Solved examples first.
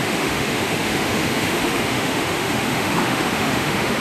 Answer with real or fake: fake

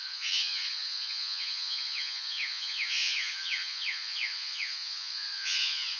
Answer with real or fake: fake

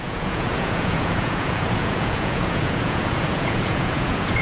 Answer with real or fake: fake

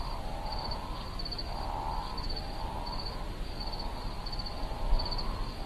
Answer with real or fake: real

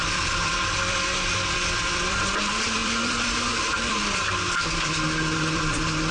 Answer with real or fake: fake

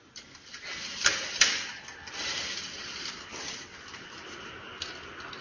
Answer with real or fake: real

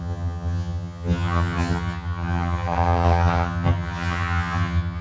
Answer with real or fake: fake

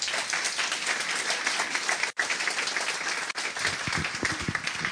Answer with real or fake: real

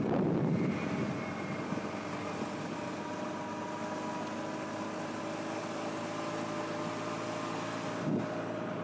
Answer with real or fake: real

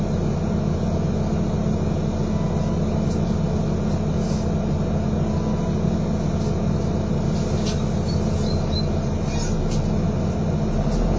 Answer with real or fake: real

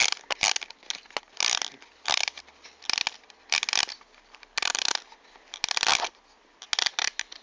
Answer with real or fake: real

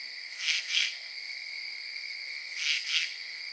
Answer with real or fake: fake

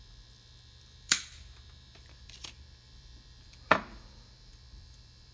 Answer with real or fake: fake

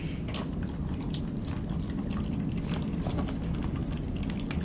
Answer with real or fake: real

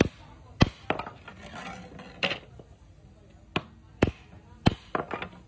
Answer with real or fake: real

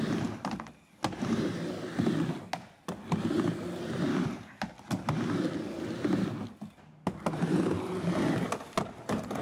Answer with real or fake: real